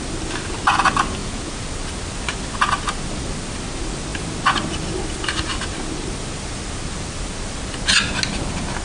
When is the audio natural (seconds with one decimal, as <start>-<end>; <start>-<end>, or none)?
0.0-1.2; 1.7-8.8